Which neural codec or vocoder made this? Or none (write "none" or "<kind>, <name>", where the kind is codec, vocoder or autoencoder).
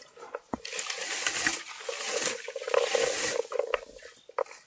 none